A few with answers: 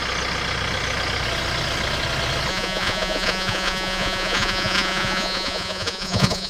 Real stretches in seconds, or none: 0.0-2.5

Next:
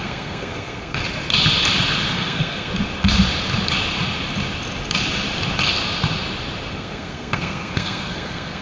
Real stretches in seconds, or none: 1.0-2.1; 2.7-6.7

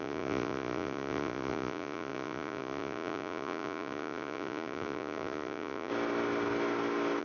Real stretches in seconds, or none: 5.9-7.2

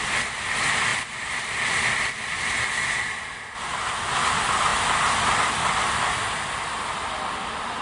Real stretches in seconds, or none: 0.0-7.8

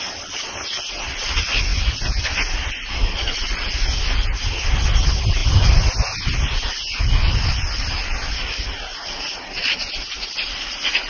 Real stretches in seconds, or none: 0.0-11.1

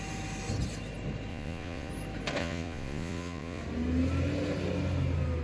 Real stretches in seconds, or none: 0.0-1.3; 1.9-2.4; 3.6-5.4

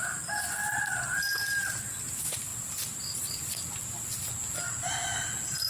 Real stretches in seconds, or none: 0.0-2.5; 4.0-5.7